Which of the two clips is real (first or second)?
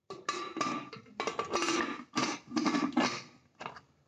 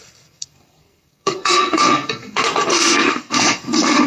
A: first